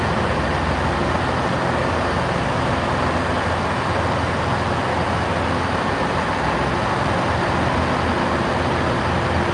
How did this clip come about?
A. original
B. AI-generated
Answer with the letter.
A